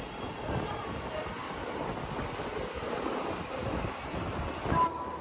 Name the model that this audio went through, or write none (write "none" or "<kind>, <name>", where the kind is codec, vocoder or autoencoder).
none